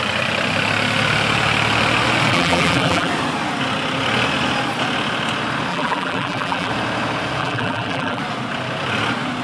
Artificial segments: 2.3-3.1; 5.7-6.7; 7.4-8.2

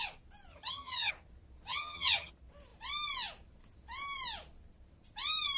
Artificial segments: 0.5-1.1; 1.7-2.3

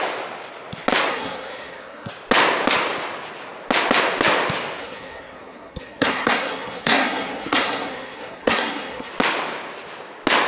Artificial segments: 1.1-2.1; 4.8-9.1

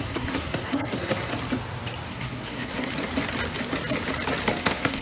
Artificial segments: 0.0-1.3; 2.1-2.9; 4.6-5.0

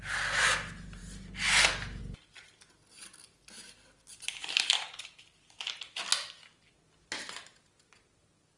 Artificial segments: none